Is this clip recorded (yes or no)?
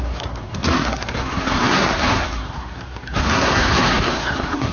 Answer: no